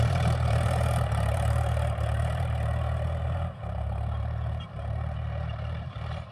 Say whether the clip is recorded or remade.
remade